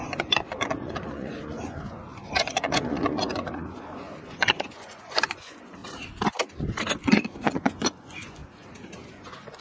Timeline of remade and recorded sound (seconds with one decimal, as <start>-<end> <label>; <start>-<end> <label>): 0.0-5.8 remade; 5.8-7.0 recorded; 7.0-8.4 remade; 8.4-9.1 recorded; 9.1-9.6 remade